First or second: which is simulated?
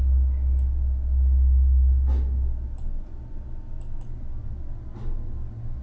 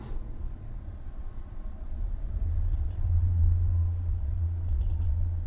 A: second